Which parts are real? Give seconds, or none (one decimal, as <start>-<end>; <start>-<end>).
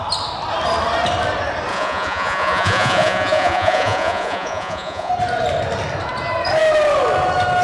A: 0.0-1.7; 5.1-7.6